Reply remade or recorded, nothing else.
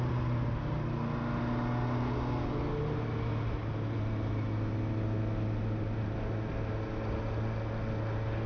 recorded